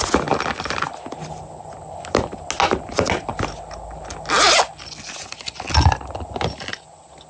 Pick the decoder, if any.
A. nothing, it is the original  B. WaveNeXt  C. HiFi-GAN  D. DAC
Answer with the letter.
A